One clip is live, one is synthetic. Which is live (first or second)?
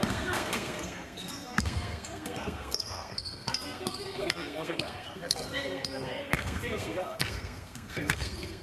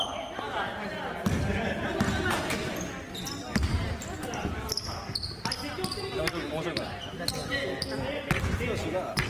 second